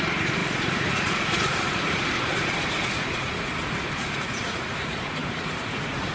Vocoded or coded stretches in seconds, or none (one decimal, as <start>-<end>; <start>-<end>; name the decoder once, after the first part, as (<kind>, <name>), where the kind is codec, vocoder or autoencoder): 0.0-6.1 (vocoder, Vocos)